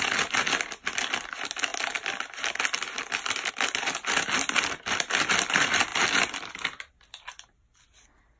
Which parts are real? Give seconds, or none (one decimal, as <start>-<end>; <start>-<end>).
0.0-8.4